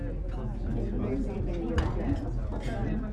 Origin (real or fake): real